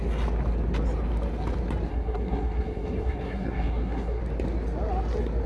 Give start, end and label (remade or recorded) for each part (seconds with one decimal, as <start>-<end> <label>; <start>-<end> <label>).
0.0-1.9 recorded; 1.9-4.2 remade; 4.2-5.5 recorded